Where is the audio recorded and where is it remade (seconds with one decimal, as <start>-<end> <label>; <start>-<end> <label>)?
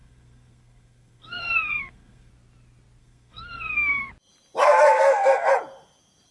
0.0-2.3 remade; 2.3-3.0 recorded; 3.0-4.1 remade; 4.1-4.6 recorded; 4.6-5.5 remade; 5.5-6.3 recorded